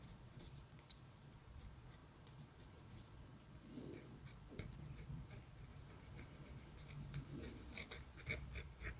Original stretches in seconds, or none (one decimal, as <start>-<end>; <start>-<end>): 5.7-8.6